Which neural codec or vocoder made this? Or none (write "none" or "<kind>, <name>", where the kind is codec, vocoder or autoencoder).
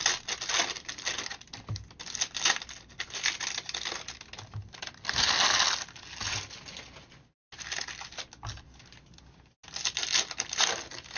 none